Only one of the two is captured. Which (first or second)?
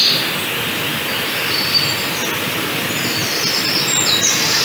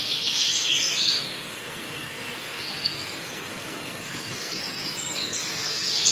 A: first